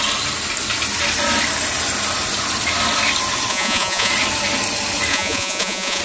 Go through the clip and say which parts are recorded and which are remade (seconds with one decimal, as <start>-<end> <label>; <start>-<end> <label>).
0.0-3.5 recorded; 3.5-4.1 remade; 4.1-5.1 recorded; 5.1-6.0 remade